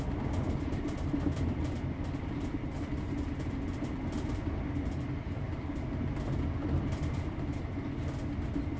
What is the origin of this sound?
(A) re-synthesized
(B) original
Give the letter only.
B